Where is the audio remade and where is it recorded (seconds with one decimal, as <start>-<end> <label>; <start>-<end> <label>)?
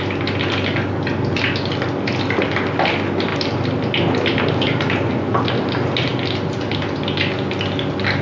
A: 0.0-8.2 recorded